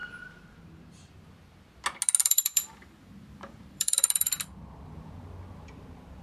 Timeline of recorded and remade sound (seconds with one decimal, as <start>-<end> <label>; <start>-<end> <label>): 0.0-0.8 remade; 0.8-2.2 recorded; 2.2-4.3 remade; 4.3-6.2 recorded